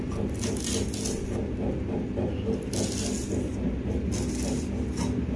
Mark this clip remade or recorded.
recorded